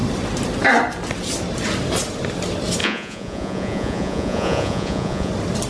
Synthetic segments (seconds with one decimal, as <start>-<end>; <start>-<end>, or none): 2.8-5.3